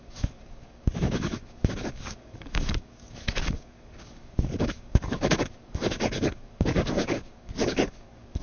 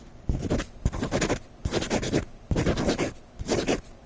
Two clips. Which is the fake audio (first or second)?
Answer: first